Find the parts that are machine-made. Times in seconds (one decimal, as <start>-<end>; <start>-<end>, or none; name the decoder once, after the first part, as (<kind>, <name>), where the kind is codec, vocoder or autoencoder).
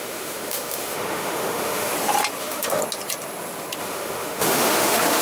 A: 0.0-1.9 (autoencoder, DAC-VAE); 2.4-2.8; 3.8-5.2